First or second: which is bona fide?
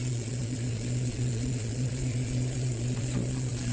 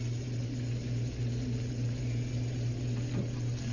second